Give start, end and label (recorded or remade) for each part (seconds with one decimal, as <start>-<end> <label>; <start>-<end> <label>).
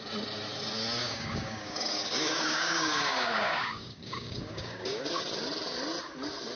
0.0-1.0 recorded; 1.0-5.0 remade; 5.0-6.6 recorded